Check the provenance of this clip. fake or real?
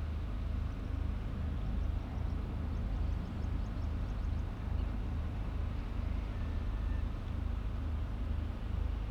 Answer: real